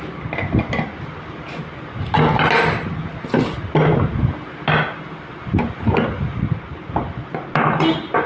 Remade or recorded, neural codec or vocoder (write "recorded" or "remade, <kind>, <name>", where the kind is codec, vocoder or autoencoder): recorded